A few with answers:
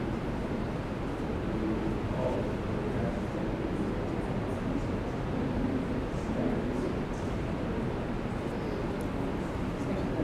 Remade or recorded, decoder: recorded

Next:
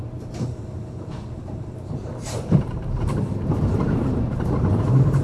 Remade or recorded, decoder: remade, vocoder, BigVGAN v2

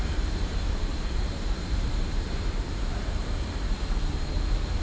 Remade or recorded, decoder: remade, vocoder, BigVGAN v2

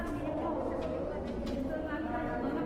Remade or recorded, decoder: recorded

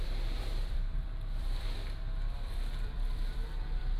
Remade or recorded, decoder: remade, vocoder, BigVGAN v2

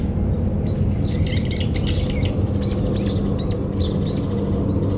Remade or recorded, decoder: recorded